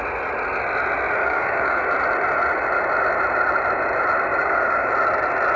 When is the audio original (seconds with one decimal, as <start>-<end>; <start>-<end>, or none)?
0.0-1.2; 1.8-4.4; 4.9-5.6